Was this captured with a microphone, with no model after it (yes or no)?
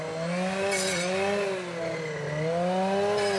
yes